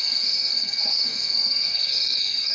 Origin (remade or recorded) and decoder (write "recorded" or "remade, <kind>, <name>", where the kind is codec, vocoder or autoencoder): remade, codec, SNAC